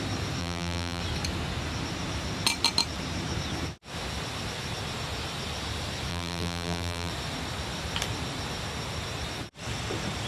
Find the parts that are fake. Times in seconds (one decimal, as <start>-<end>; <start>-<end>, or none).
0.4-1.0; 6.1-7.1